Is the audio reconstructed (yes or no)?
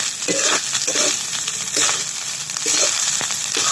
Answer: no